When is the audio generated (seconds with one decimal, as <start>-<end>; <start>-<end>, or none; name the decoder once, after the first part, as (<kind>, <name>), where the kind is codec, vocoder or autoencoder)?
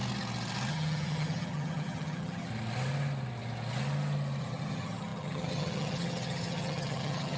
0.7-2.5 (vocoder, HiFi-GAN); 4.4-7.4